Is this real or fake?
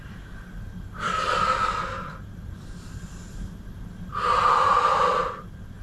real